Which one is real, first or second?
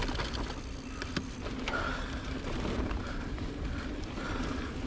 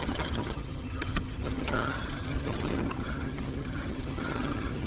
first